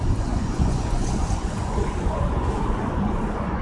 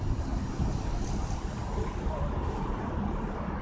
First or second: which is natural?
second